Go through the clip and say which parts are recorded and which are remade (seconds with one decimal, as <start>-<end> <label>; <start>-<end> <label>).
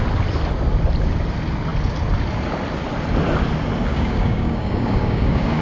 0.0-3.9 recorded; 3.9-5.6 remade